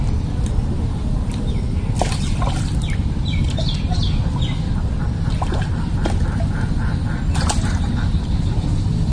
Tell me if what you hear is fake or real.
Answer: real